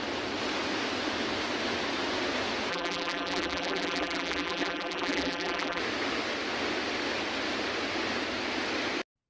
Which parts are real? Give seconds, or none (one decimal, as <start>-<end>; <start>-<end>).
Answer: 0.0-2.7; 5.8-9.3